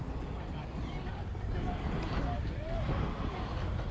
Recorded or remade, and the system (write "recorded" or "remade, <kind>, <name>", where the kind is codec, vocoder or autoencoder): recorded